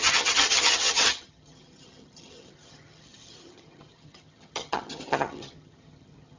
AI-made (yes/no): yes